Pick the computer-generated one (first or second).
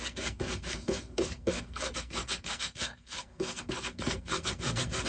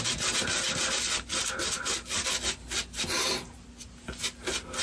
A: first